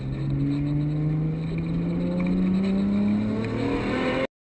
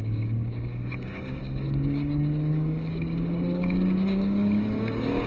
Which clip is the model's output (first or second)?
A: second